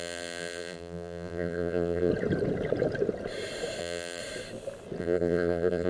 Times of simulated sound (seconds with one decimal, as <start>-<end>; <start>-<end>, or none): 0.0-2.1; 3.8-4.2; 5.0-5.9